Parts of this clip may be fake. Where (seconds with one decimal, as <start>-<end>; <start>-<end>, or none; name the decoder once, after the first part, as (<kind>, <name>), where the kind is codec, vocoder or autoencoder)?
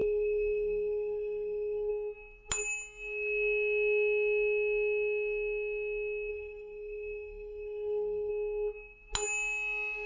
0.0-1.9 (codec, SNAC); 6.3-8.3